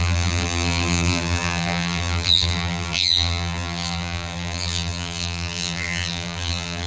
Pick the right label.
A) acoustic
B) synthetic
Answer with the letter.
B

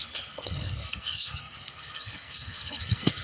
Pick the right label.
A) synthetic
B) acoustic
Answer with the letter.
A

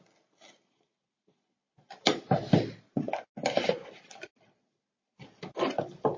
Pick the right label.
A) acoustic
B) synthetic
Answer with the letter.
A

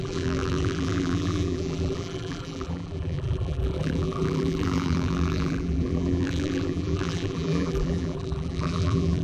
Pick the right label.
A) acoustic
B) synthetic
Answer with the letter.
B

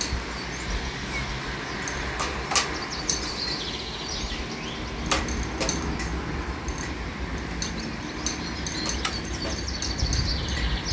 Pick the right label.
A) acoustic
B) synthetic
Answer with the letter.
A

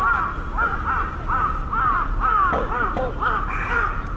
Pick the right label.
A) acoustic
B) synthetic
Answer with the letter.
A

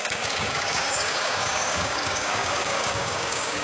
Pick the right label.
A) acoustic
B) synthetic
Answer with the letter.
B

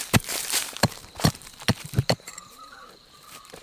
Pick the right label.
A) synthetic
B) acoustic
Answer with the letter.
A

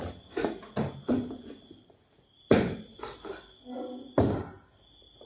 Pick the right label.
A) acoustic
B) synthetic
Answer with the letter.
A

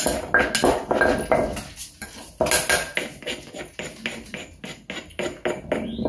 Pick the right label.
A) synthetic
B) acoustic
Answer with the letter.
B